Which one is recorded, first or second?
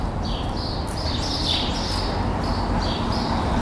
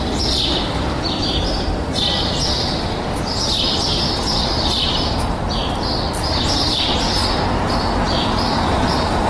first